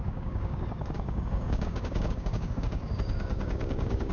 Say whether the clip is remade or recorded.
remade